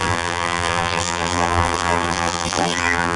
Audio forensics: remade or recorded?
remade